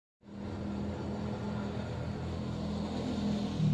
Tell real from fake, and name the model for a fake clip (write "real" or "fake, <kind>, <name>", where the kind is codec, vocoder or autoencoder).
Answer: real